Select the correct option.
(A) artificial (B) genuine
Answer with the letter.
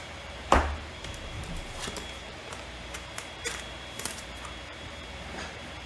A